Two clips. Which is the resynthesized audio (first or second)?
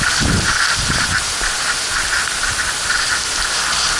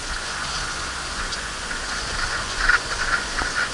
second